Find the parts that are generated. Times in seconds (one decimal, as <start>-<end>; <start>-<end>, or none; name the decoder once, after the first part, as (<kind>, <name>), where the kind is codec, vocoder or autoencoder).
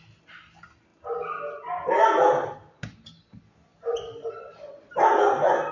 none